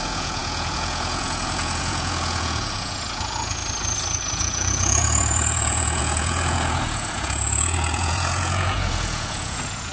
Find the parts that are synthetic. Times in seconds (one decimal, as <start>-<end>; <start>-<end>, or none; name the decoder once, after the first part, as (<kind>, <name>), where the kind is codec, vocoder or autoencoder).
0.0-3.6 (vocoder, Vocos); 4.3-9.9